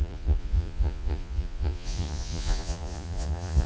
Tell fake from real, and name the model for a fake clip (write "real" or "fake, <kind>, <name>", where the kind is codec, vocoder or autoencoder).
fake, vocoder, Vocos